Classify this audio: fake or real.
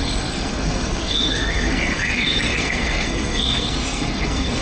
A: fake